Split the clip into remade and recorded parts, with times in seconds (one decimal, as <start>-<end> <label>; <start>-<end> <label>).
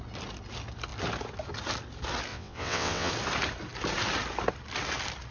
0.0-2.3 recorded; 2.3-3.1 remade; 3.1-5.3 recorded